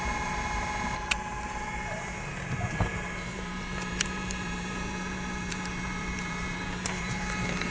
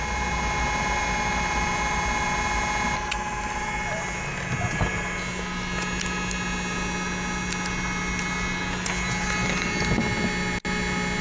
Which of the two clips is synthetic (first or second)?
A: first